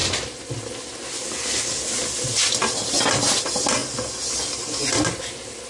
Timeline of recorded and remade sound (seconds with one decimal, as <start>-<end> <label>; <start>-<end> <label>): 0.0-5.7 recorded